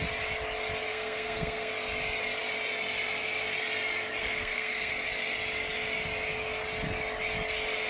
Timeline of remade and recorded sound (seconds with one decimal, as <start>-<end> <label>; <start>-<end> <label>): 0.0-0.9 recorded; 0.9-1.7 remade; 1.7-4.2 recorded; 4.2-4.9 remade; 4.9-7.9 recorded